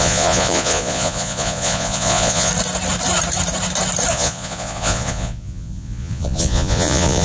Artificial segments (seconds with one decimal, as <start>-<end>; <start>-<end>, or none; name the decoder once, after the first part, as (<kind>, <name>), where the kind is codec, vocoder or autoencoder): 0.0-2.5 (vocoder, Vocos); 4.1-7.2